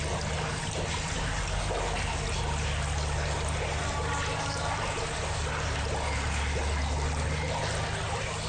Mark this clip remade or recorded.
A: recorded